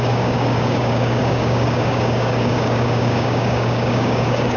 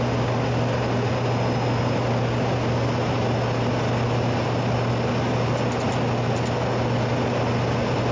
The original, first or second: second